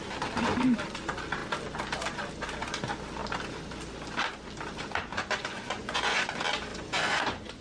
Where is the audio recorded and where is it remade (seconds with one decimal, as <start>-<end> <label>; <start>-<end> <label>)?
0.0-5.1 recorded; 5.1-6.3 remade; 6.3-6.7 recorded; 6.7-7.6 remade